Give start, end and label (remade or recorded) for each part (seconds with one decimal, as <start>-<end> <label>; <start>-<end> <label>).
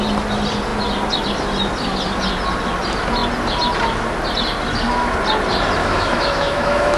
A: 0.0-5.8 recorded; 5.8-7.0 remade